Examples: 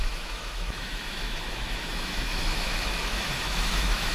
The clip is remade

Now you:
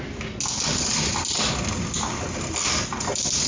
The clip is recorded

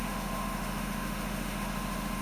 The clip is remade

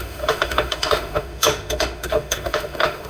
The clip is remade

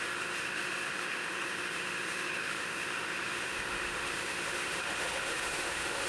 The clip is remade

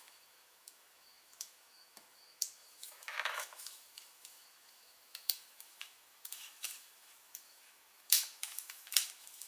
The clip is remade